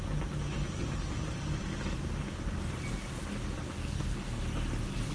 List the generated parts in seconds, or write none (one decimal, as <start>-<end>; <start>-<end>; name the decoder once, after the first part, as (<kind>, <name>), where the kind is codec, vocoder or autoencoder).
3.8-4.4 (codec, SNAC)